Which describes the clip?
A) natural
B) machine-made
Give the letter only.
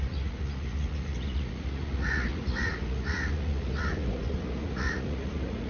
B